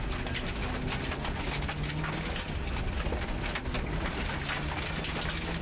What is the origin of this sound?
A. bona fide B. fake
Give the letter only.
A